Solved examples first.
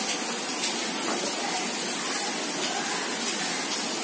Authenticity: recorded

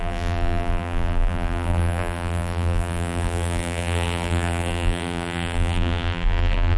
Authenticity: remade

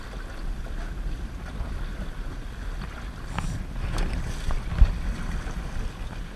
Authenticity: recorded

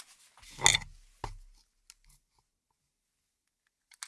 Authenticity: recorded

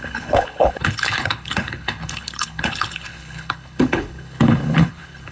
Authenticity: remade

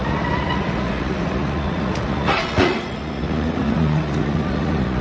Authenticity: remade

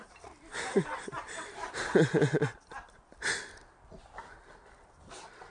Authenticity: recorded